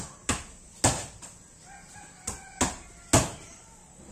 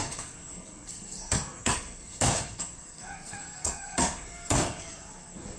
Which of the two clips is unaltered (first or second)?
first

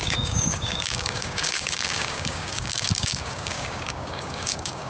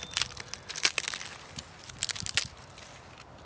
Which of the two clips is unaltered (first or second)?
second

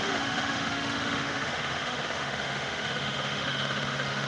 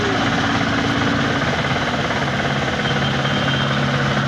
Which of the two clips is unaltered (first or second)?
second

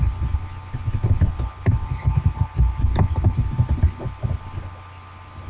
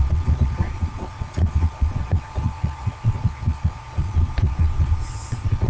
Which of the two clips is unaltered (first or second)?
first